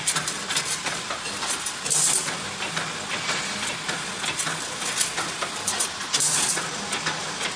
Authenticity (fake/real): real